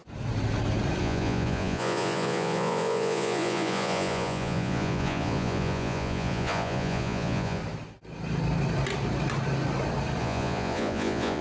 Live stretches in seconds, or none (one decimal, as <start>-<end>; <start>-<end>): 0.0-1.0; 7.6-10.2